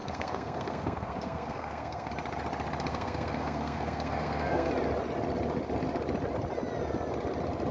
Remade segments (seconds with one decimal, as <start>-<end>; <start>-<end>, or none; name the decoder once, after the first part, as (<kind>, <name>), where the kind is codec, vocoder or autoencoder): 0.0-2.1 (codec, SNAC); 2.9-4.7